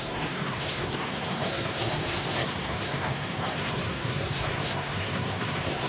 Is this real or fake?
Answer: fake